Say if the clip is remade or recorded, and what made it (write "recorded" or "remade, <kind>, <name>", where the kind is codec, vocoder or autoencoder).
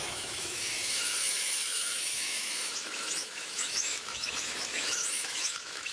remade, autoencoder, DAC-VAE